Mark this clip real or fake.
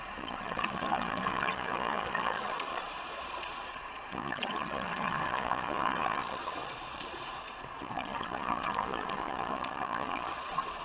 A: fake